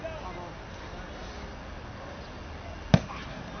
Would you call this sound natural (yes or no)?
yes